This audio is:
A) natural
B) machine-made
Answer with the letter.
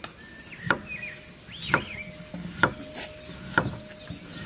A